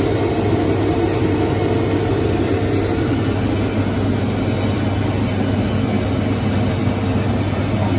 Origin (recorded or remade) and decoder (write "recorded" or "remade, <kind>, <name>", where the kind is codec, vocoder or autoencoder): recorded